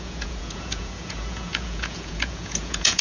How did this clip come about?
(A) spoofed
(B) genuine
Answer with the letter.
A